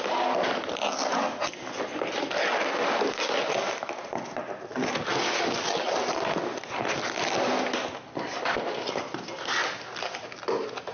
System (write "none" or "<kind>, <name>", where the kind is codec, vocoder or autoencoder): none